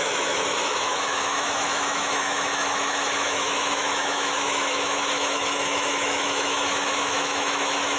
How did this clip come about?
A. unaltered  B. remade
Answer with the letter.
B